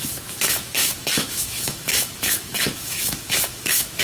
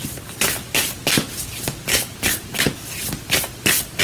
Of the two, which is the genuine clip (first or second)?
second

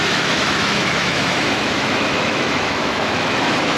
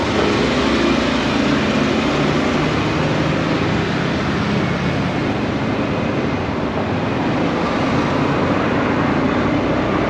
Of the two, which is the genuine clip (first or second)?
second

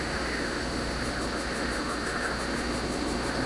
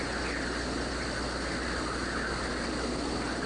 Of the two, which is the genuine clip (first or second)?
second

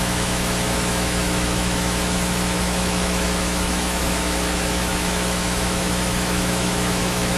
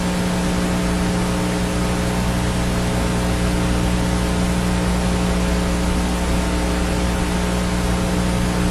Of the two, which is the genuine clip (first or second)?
second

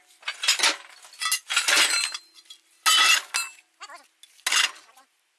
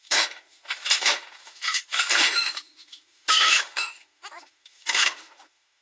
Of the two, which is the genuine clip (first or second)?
first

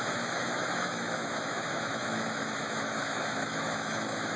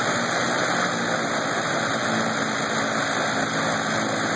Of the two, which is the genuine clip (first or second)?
second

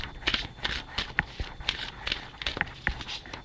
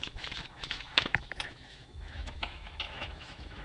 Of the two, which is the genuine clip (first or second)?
first